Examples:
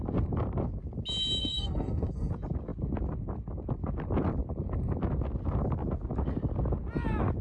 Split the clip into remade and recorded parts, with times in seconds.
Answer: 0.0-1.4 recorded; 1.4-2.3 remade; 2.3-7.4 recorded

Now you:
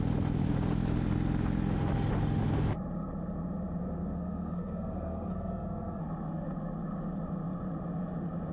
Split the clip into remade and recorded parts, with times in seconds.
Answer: 0.0-3.8 recorded; 3.8-6.0 remade; 6.0-8.5 recorded